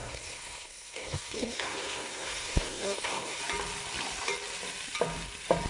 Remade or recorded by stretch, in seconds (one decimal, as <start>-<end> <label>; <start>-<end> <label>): 0.0-3.4 remade; 3.4-5.7 recorded